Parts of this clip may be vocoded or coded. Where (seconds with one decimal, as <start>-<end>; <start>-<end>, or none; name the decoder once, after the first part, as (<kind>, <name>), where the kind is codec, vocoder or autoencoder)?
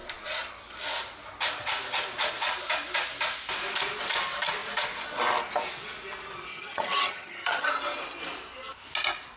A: 6.5-7.7 (vocoder, HiFi-GAN)